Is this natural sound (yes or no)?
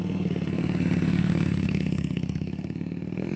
no